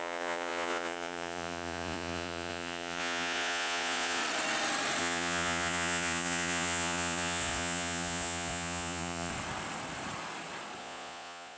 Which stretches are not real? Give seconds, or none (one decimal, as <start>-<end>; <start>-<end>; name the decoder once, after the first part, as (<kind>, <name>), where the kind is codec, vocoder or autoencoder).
0.0-4.2 (vocoder, Vocos); 5.0-9.3; 10.8-11.6